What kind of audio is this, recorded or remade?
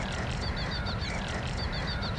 remade